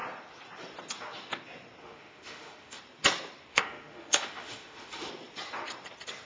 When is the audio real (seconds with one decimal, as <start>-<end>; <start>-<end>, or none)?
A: 0.0-1.8; 2.8-3.5; 5.1-6.2